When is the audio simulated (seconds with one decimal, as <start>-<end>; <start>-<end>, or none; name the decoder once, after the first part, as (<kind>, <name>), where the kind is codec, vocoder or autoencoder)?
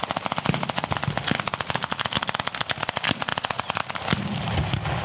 none